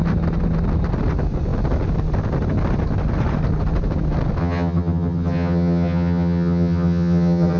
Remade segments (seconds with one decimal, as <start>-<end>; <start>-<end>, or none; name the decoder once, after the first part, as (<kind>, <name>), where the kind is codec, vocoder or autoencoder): 4.4-7.6 (vocoder, HiFi-GAN)